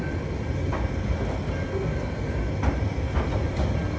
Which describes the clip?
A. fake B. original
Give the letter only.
B